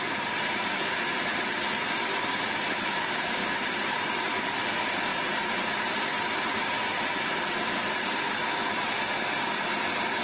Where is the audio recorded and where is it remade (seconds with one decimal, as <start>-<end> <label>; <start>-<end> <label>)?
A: 0.0-1.3 remade; 1.3-2.7 recorded; 2.7-5.1 remade; 5.1-10.2 recorded